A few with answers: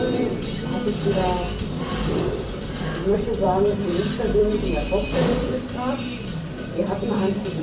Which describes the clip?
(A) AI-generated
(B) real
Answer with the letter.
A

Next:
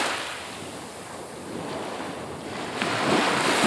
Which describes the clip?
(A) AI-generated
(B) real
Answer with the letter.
B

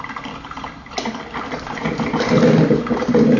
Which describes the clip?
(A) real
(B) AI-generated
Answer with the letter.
A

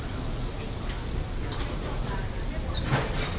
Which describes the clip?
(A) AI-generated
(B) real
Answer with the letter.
B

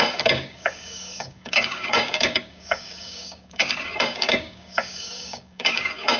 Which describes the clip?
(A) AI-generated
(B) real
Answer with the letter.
A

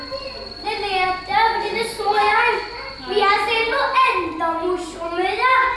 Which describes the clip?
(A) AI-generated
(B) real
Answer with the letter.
B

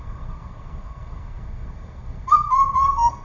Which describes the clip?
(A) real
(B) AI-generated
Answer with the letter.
B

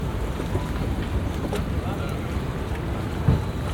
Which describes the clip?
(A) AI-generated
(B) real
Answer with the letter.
B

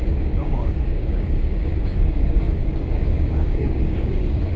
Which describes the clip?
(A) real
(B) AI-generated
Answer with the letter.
B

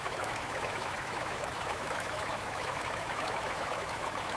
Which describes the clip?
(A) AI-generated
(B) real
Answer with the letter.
A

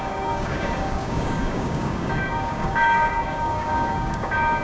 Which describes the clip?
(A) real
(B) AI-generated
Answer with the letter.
B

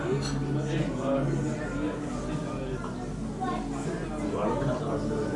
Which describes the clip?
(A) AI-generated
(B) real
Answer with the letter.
B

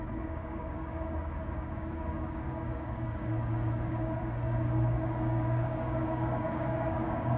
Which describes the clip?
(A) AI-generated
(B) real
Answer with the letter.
A